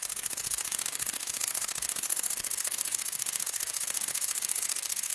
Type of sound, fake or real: fake